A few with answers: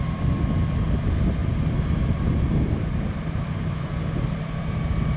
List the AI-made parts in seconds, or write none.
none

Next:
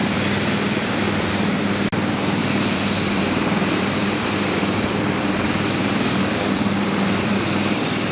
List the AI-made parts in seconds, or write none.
0.0-1.6 (vocoder, BigVGAN v2); 2.4-7.3

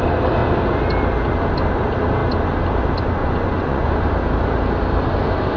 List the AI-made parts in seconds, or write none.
3.2-4.1 (vocoder, Vocos)